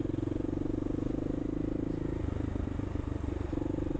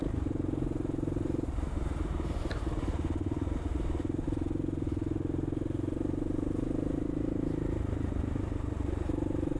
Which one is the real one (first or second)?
first